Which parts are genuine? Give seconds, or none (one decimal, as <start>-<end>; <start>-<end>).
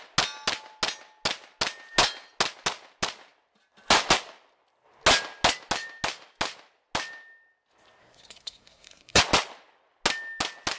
0.0-8.0; 9.2-10.8